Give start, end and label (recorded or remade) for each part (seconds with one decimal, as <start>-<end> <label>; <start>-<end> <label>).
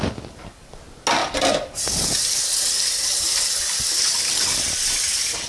0.0-5.5 recorded